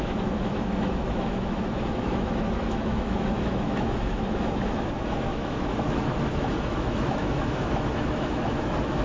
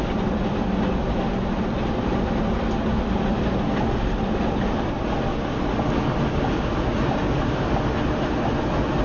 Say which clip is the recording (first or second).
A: second